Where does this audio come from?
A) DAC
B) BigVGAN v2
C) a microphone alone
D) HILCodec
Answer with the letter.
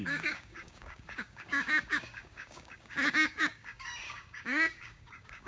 A